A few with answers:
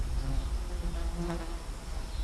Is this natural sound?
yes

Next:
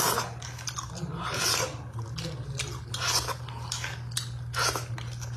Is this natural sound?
yes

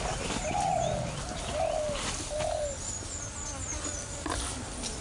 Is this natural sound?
yes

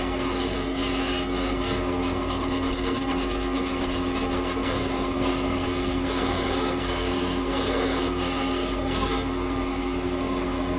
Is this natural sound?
no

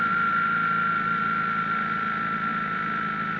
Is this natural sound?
yes